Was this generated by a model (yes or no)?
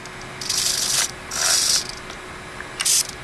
no